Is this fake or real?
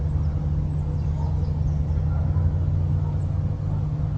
real